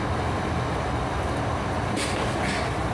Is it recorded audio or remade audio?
recorded